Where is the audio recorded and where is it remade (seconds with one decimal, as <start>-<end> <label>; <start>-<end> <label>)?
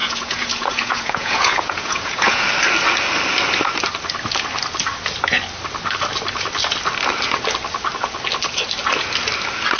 0.0-2.4 remade; 2.4-9.8 recorded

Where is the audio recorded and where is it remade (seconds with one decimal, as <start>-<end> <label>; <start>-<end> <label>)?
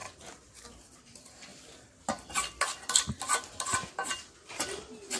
0.0-5.2 recorded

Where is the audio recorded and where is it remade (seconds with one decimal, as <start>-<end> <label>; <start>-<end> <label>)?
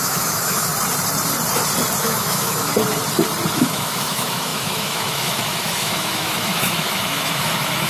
0.0-0.7 remade; 0.7-2.0 recorded; 2.0-2.7 remade; 2.7-3.5 recorded; 3.5-7.9 remade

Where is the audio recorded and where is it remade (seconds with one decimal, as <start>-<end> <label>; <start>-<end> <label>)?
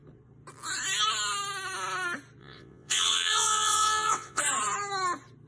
0.0-2.4 recorded; 2.4-4.4 remade; 4.4-5.5 recorded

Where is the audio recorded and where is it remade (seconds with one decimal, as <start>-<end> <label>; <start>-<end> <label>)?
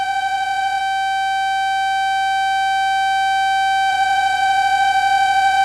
0.0-0.8 remade; 0.8-3.9 recorded; 3.9-5.6 remade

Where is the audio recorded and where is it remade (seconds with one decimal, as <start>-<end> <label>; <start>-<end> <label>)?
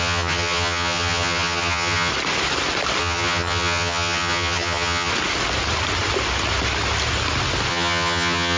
0.0-2.1 remade; 2.1-3.0 recorded; 3.0-5.1 remade; 5.1-7.7 recorded; 7.7-8.6 remade